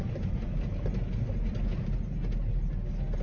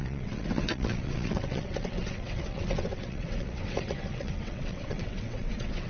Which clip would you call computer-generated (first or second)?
second